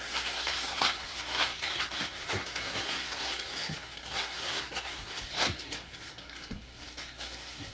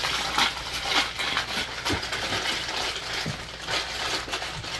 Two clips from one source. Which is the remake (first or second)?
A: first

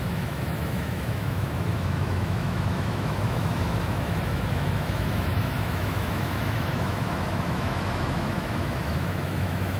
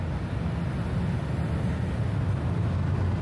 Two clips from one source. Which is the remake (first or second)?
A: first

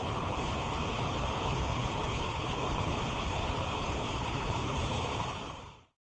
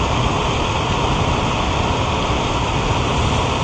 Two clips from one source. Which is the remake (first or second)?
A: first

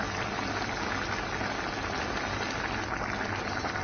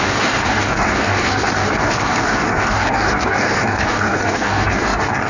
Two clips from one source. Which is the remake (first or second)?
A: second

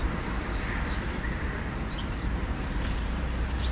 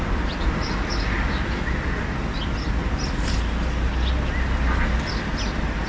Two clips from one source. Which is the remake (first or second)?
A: first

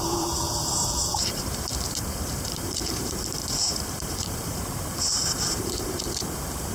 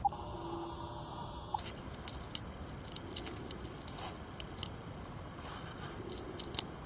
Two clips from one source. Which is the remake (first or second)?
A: first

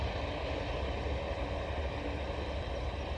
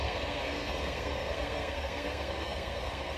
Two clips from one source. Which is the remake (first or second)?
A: second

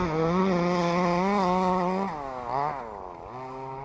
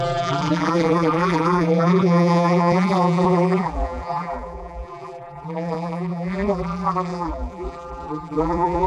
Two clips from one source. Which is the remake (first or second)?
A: second